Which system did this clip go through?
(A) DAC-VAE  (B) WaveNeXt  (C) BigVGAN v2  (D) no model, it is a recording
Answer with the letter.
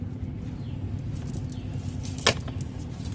D